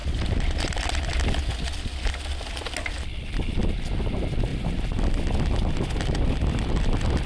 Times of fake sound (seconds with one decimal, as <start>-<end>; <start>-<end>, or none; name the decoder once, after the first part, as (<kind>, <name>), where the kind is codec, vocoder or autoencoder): none